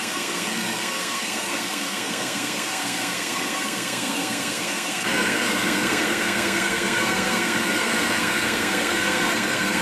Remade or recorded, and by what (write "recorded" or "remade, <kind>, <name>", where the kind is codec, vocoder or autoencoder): remade, codec, SNAC